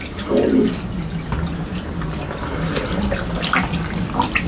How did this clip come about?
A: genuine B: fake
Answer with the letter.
A